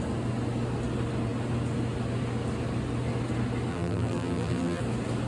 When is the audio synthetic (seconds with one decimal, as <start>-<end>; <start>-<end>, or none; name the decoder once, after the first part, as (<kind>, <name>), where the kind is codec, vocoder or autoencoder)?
3.7-4.8 (vocoder, BigVGAN v2)

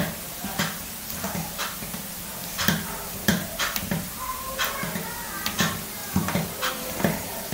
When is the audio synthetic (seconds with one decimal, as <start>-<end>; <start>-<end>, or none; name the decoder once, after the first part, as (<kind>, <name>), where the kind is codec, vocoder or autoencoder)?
3.3-4.4 (vocoder, BigVGAN v2)

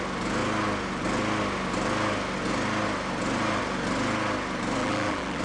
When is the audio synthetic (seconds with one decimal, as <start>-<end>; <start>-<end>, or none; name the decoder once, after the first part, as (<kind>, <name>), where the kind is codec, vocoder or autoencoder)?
4.8-5.4 (vocoder, BigVGAN v2)